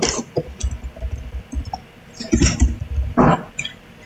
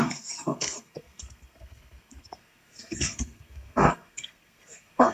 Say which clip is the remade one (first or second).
second